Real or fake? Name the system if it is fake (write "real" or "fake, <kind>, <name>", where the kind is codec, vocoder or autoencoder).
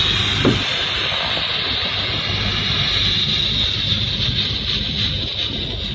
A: real